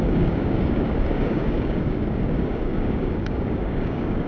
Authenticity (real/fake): fake